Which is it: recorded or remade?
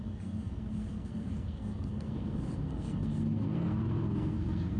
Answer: remade